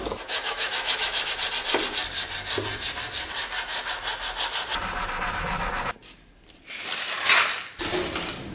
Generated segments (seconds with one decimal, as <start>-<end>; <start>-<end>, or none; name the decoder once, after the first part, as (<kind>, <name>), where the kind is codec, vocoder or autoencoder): 0.0-1.3 (autoencoder, DAC-VAE)